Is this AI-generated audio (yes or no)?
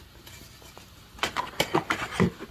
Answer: no